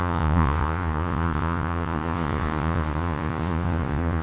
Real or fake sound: fake